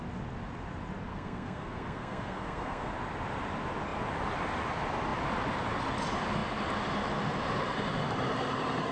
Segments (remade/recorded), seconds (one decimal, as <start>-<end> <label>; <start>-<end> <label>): 0.0-1.1 recorded; 1.1-2.9 remade; 2.9-8.9 recorded

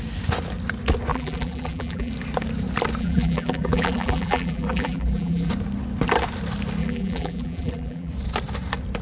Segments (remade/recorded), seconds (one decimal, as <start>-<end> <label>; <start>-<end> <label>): 0.0-1.1 recorded; 1.1-2.1 remade; 2.1-3.0 recorded; 3.0-5.5 remade; 5.5-6.8 recorded; 6.8-8.1 remade; 8.1-9.0 recorded

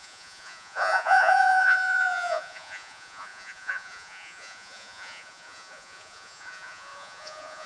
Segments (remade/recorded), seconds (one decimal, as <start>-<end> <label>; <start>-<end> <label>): 0.0-7.7 remade

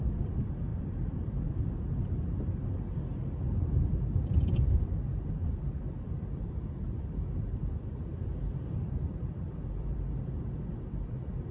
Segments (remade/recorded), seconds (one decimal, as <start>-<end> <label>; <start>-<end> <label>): 0.0-11.5 remade